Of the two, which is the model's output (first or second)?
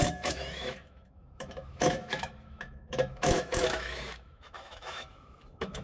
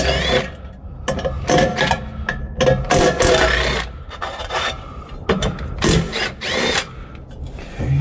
first